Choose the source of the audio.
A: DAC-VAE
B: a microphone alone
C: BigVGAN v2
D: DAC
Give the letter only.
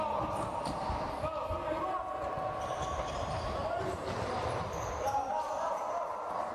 B